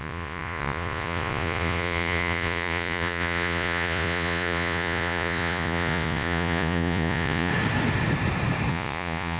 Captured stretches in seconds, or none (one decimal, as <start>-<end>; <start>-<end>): 7.5-8.7